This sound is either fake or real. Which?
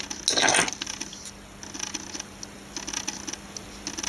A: real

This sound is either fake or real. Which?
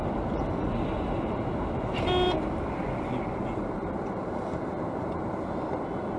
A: real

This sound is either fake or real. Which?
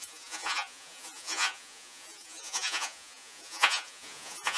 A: fake